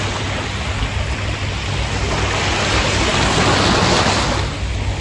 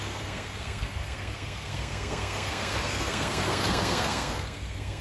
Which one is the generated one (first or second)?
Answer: second